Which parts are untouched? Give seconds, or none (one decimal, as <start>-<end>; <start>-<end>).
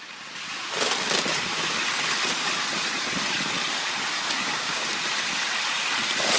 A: 0.0-4.4; 4.9-6.4